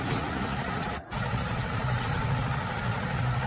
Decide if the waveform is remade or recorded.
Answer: remade